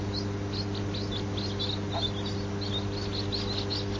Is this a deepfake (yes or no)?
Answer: no